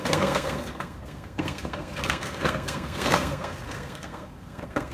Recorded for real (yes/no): no